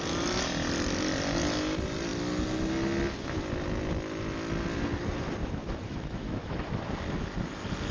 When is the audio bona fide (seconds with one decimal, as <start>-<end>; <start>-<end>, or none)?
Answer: 0.0-5.4; 6.8-7.9